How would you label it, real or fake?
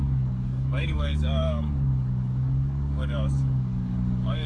fake